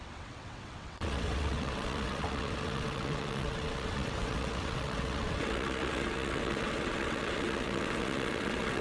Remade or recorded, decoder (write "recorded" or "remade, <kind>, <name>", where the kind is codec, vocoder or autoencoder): remade, vocoder, WaveNeXt